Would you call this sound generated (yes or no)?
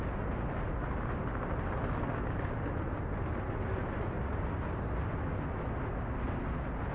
no